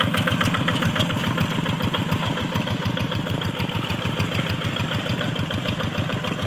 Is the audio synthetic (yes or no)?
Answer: yes